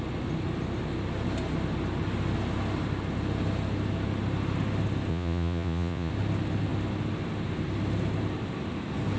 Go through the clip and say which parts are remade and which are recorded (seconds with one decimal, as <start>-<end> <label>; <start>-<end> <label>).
0.0-5.1 recorded; 5.1-6.1 remade; 6.1-9.2 recorded